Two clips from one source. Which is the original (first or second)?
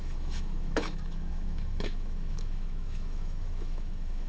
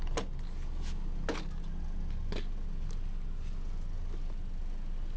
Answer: second